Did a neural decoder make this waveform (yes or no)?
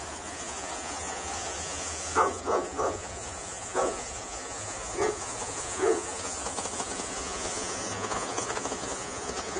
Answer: yes